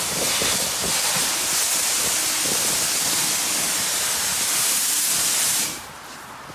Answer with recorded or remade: recorded